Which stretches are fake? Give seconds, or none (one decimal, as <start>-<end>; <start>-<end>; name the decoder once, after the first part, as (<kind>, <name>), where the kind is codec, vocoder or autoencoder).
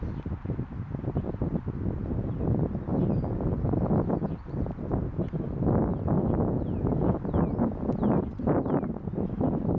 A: none